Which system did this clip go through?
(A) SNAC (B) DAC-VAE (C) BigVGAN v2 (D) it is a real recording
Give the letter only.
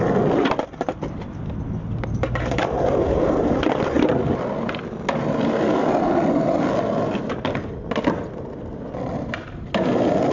D